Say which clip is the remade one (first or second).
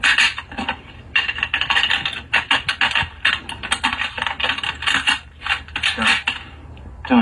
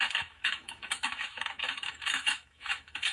second